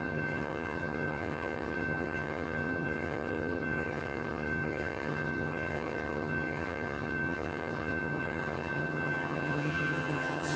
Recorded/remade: remade